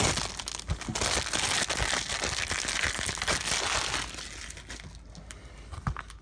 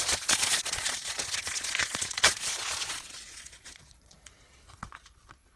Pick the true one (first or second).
first